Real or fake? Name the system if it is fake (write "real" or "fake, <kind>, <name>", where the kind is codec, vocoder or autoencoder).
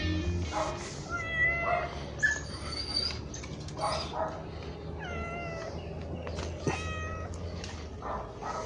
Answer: real